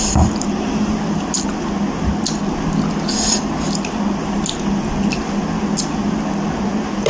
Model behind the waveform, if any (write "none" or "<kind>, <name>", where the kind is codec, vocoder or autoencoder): none